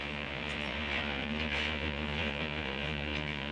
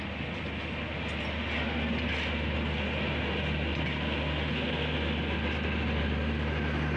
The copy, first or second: first